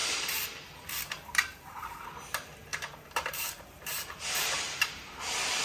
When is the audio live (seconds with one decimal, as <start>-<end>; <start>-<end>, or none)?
0.6-1.5; 2.1-2.7